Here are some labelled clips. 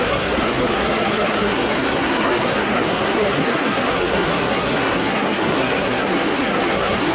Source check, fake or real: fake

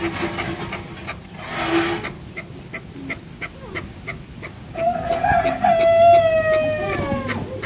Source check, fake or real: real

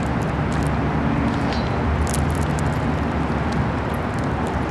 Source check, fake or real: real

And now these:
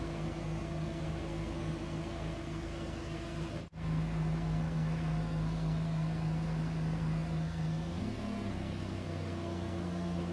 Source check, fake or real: fake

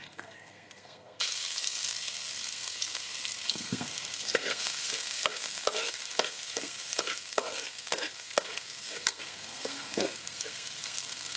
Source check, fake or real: fake